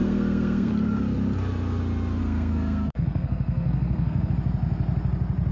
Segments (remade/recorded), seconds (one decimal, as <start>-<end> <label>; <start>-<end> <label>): 0.0-0.7 remade; 0.7-2.2 recorded; 2.2-4.3 remade; 4.3-5.5 recorded